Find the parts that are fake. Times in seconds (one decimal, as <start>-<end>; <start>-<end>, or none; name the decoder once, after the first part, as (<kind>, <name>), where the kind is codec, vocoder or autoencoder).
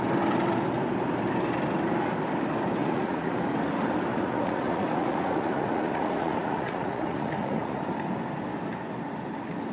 2.8-3.4 (vocoder, Vocos); 4.1-7.8